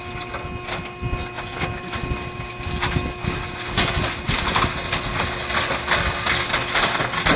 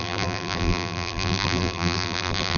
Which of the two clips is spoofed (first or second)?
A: second